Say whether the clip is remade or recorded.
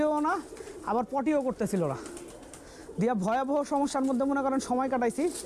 recorded